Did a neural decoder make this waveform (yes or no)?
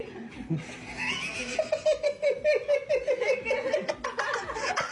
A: no